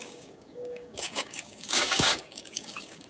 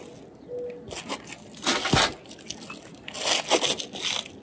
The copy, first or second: first